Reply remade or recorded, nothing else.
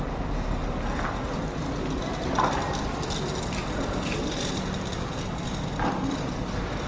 recorded